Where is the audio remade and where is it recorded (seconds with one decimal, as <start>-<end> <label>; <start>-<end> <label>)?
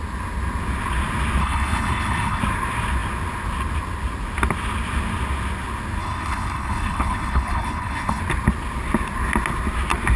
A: 0.0-1.4 recorded; 1.4-2.4 remade; 2.4-6.0 recorded; 6.0-8.2 remade; 8.2-10.2 recorded